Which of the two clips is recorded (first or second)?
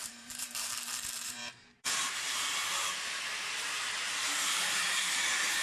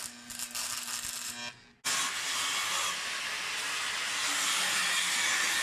second